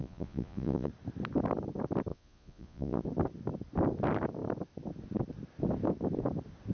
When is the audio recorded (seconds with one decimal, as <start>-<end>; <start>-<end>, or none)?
0.9-2.1; 3.0-6.7